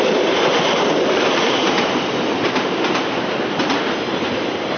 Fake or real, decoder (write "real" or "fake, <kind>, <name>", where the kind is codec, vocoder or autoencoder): fake, vocoder, BigVGAN v2